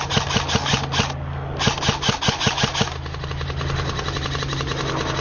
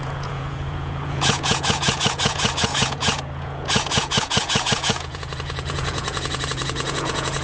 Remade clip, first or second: second